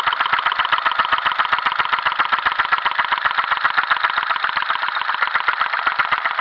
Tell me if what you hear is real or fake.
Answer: fake